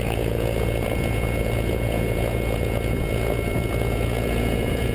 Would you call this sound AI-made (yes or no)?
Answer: yes